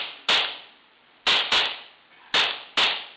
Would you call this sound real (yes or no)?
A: yes